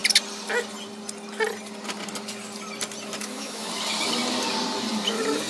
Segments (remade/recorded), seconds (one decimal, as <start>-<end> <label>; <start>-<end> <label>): 0.0-3.2 recorded; 3.2-3.7 remade; 3.7-5.5 recorded